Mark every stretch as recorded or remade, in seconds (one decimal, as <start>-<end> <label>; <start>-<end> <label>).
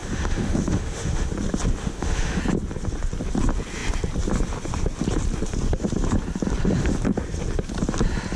0.0-1.3 remade; 1.3-1.8 recorded; 1.8-2.4 remade; 2.4-8.4 recorded